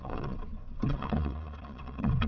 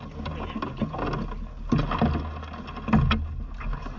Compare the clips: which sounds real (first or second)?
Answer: second